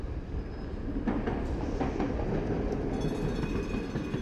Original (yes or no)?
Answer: yes